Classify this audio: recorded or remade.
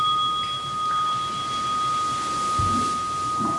recorded